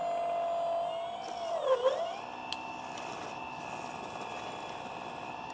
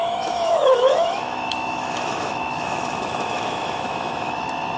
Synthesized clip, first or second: second